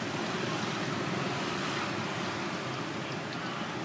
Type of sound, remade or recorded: recorded